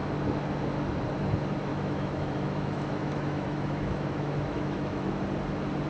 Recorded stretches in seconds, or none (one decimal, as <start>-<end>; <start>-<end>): 0.0-1.7; 5.2-5.9

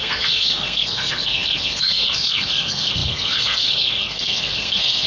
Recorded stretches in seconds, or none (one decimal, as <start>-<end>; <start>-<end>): none

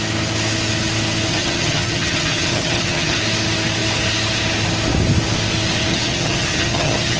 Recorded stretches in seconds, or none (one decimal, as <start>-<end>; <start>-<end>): 0.0-1.3; 3.2-5.9

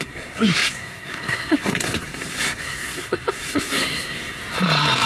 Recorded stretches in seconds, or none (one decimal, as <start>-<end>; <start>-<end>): 4.4-5.1

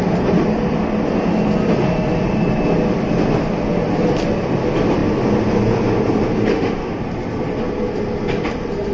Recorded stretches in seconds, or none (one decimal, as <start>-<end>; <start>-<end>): 0.0-6.5; 7.0-8.9

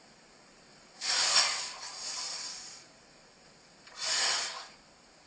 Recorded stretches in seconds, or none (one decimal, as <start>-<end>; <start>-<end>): 0.0-0.7; 3.9-5.3

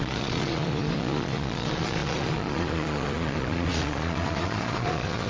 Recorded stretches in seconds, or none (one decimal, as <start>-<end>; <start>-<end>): none

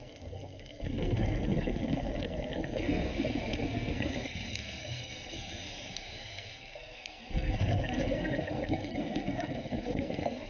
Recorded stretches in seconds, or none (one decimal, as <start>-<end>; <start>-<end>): none